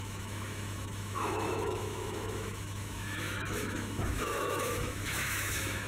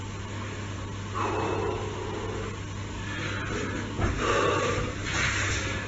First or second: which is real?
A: second